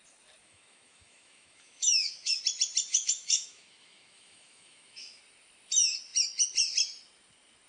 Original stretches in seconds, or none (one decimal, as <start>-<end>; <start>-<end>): 0.0-0.4; 2.4-2.9; 5.2-7.7